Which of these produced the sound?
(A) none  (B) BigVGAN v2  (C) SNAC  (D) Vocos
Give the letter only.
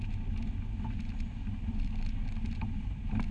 A